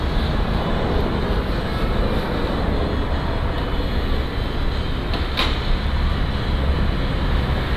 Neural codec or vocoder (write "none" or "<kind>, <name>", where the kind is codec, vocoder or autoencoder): none